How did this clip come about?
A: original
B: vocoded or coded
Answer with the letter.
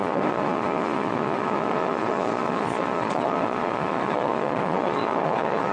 B